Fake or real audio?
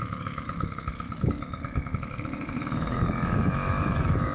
fake